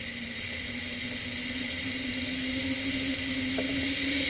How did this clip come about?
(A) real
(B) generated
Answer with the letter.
A